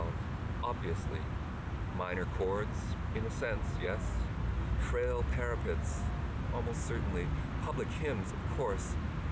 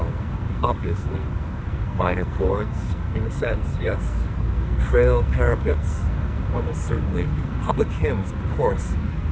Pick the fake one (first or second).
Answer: second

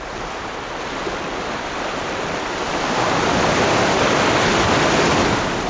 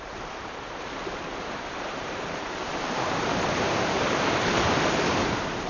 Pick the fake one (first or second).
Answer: second